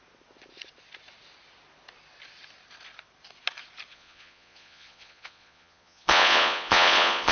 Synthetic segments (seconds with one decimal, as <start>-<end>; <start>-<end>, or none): 3.9-7.3